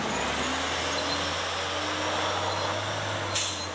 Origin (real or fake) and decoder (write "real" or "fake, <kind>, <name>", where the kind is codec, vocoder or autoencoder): real